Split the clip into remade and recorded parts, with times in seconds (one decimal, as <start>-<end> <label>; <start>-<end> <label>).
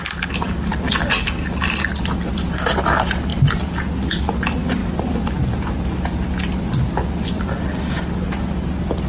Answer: 0.0-3.3 recorded; 3.3-4.2 remade; 4.2-9.1 recorded